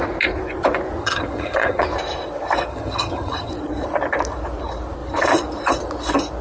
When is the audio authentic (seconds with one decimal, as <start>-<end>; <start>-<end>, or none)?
0.0-1.0; 1.8-2.7; 3.5-6.4